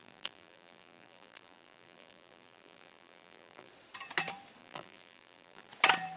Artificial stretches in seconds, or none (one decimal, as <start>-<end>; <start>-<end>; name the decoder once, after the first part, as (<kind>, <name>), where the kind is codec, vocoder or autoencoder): 0.0-3.7 (vocoder, BigVGAN v2); 4.6-5.7